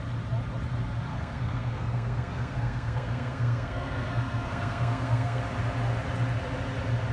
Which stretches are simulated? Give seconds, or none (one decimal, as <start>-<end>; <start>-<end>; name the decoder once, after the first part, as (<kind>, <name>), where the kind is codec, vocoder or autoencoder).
1.1-5.4 (codec, SNAC)

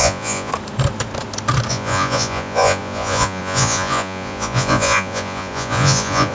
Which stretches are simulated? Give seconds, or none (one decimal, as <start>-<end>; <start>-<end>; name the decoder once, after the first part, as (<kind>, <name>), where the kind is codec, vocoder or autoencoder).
0.0-0.5 (vocoder, Vocos); 1.7-6.3

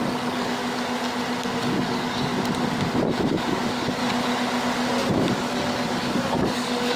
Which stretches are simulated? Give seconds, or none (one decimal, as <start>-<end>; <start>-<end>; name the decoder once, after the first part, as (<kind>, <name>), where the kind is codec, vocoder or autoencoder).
0.0-0.6 (codec, DAC); 1.6-2.3; 3.3-4.0; 5.1-7.0

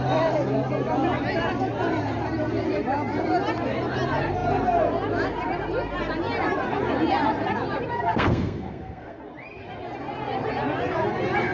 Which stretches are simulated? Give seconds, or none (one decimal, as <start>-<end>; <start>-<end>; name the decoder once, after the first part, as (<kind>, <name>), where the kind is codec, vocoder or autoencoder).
7.9-9.2 (codec, SNAC)